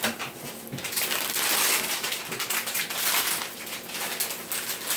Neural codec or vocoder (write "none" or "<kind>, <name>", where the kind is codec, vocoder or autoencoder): none